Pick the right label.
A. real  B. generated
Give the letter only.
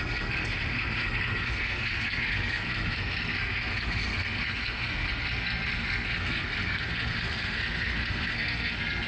B